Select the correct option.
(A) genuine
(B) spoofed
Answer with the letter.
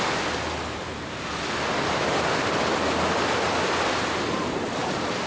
A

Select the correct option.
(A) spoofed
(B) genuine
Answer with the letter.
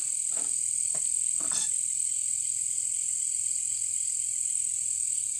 B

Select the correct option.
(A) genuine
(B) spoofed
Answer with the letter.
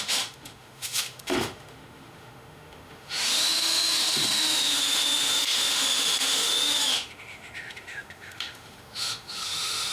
B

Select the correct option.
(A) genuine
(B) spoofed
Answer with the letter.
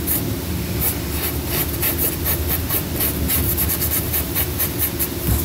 B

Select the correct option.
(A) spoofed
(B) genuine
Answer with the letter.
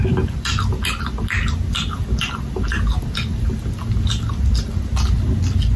B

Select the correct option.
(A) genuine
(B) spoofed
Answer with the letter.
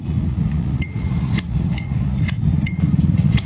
B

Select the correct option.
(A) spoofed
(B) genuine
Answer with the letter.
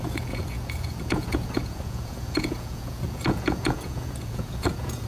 A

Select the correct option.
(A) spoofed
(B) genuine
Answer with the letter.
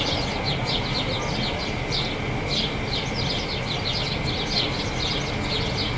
B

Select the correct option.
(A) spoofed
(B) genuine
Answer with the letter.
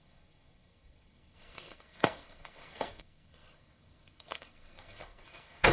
A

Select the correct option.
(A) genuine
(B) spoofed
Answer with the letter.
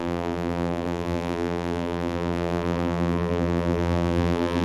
B